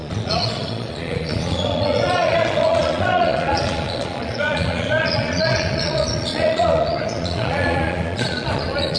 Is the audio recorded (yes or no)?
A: no